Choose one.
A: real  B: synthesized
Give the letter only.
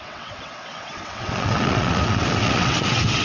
B